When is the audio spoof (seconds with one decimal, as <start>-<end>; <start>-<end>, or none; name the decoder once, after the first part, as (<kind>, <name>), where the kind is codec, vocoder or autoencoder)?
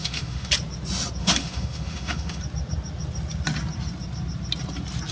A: 0.0-0.5 (autoencoder, DAC-VAE); 1.2-2.4